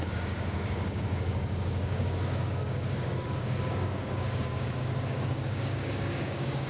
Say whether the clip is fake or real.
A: fake